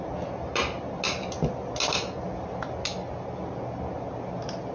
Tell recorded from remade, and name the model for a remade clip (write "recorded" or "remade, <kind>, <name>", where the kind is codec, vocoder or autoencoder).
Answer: recorded